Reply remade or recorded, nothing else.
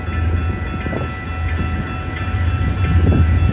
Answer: recorded